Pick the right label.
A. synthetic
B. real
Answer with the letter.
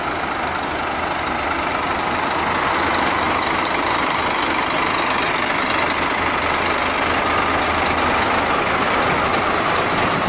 B